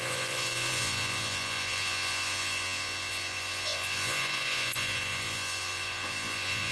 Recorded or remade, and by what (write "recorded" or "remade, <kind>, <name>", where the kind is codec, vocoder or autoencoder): remade, vocoder, Vocos